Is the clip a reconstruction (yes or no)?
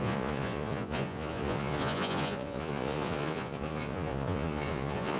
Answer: yes